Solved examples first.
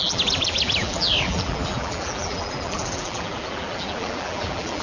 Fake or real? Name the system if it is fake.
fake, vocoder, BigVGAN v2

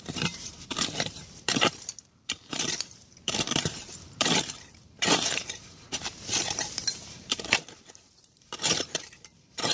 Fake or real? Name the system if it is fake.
fake, vocoder, BigVGAN v2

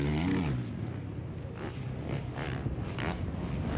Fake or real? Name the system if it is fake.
real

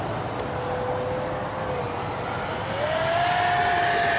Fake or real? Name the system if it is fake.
real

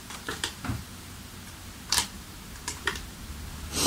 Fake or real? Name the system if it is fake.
fake, vocoder, BigVGAN v2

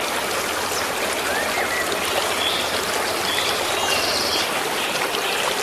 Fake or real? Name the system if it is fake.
fake, vocoder, BigVGAN v2